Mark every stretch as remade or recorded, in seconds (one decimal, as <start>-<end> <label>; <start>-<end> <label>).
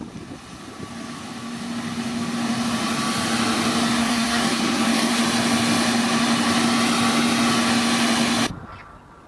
0.0-4.0 recorded; 4.0-5.2 remade; 5.2-9.3 recorded